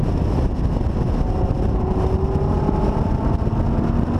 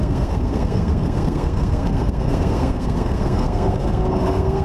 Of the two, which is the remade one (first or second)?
second